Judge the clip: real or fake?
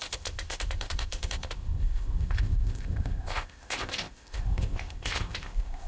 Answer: fake